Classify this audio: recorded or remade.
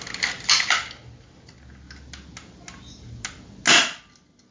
recorded